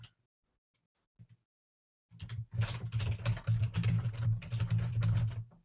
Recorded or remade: recorded